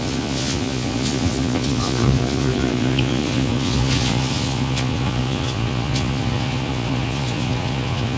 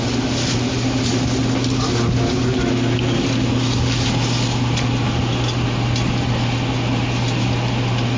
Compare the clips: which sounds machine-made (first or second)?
first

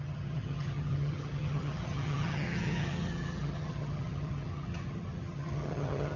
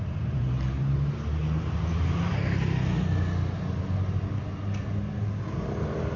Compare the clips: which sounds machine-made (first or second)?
first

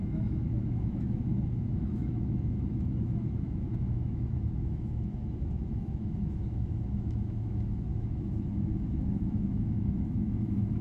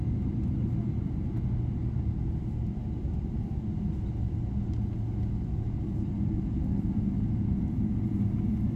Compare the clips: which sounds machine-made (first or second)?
first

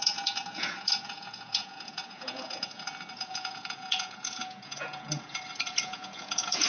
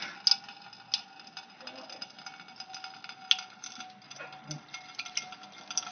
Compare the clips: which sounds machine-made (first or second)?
first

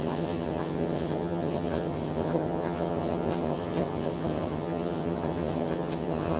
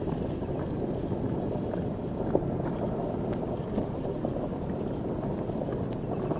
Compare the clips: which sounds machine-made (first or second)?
first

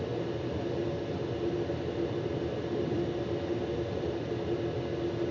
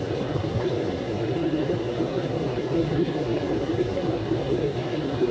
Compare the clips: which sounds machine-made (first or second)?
second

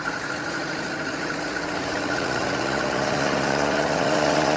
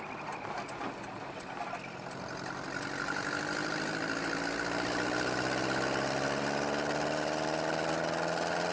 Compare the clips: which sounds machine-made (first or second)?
first